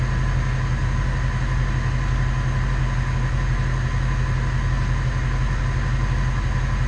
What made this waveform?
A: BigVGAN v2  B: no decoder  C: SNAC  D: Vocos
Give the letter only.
B